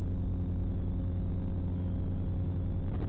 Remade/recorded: recorded